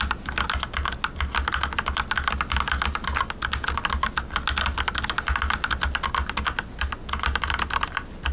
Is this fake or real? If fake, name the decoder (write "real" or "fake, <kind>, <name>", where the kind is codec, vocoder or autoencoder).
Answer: real